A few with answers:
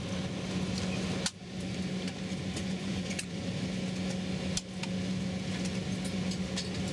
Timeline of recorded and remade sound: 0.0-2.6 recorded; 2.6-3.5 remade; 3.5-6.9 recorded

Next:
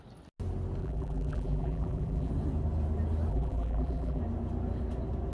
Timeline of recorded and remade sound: 0.0-0.8 recorded; 0.8-2.3 remade; 2.3-3.3 recorded; 3.3-4.2 remade; 4.2-5.3 recorded

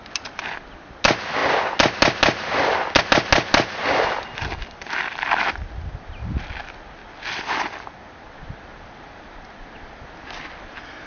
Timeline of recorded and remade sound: 0.0-11.1 recorded

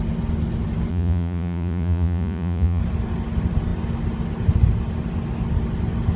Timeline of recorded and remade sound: 0.0-0.9 recorded; 0.9-2.8 remade; 2.8-6.2 recorded

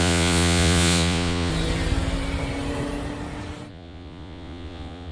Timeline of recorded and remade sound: 0.0-1.5 remade; 1.5-3.7 recorded; 3.7-5.1 remade

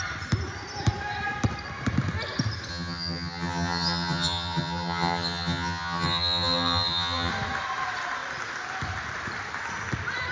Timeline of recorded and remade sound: 0.0-2.7 recorded; 2.7-7.3 remade; 7.3-10.3 recorded

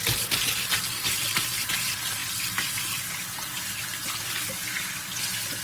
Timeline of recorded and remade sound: 0.0-5.6 recorded

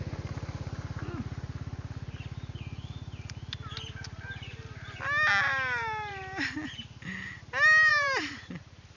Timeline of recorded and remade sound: 0.0-5.4 recorded; 5.4-6.2 remade; 6.2-7.9 recorded; 7.9-9.0 remade